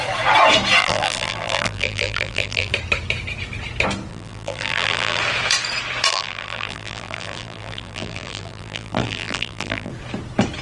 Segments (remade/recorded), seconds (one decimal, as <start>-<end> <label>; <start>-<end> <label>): 0.0-0.8 recorded; 0.8-2.7 remade; 2.7-4.1 recorded; 4.1-5.2 remade; 5.2-6.1 recorded; 6.1-9.9 remade; 9.9-10.6 recorded